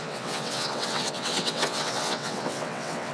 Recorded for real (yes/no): no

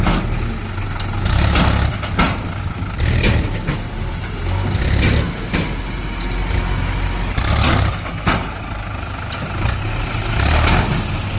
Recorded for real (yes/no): yes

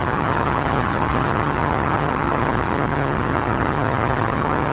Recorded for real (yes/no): no